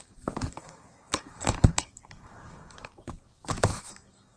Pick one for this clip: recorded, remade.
remade